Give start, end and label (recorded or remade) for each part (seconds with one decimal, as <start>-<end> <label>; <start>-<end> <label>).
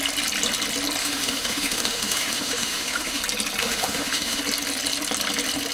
0.0-1.0 recorded; 1.0-3.2 remade; 3.2-3.6 recorded; 3.6-4.4 remade; 4.4-5.7 recorded